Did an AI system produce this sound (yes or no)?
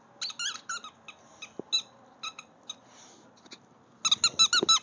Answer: no